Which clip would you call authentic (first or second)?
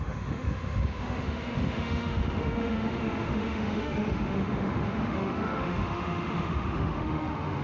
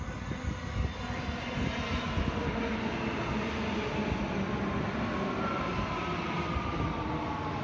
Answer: second